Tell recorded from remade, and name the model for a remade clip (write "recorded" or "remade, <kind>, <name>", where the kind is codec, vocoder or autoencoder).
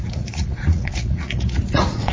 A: remade, vocoder, Vocos